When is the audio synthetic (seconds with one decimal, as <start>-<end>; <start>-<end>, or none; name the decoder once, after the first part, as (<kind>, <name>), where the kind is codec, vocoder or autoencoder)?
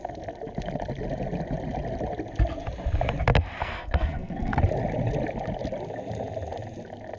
3.6-4.6 (codec, SNAC)